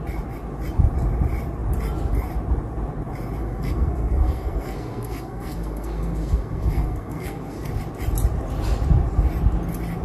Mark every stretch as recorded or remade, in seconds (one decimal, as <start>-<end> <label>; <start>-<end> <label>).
0.0-3.4 recorded; 3.4-7.7 remade; 7.7-10.0 recorded